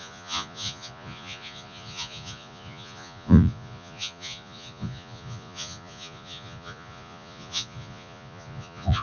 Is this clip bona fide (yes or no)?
no